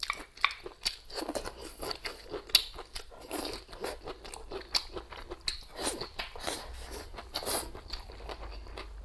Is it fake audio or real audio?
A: real